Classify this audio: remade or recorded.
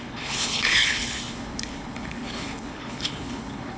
remade